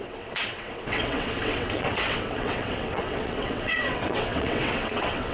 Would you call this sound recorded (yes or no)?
no